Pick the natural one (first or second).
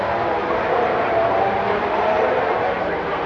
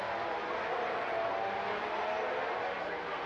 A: second